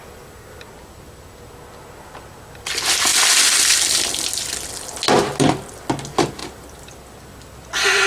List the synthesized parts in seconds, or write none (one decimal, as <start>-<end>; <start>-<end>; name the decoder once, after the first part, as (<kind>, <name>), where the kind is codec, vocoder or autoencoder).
none

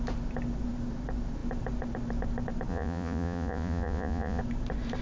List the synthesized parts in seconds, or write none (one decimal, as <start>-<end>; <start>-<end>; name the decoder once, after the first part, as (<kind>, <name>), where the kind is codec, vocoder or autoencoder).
2.7-4.4 (vocoder, Vocos)

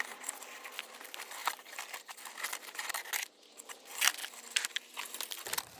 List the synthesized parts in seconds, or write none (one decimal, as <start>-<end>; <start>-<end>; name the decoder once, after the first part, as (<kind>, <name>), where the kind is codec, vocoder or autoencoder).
none

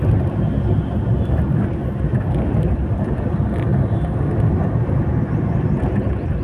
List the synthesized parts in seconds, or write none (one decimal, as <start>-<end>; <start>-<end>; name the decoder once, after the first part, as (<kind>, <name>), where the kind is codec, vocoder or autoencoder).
none

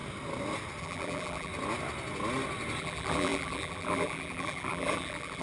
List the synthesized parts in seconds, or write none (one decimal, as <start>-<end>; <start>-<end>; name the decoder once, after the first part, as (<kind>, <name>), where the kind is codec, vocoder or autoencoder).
0.8-1.5 (vocoder, BigVGAN v2); 2.8-5.4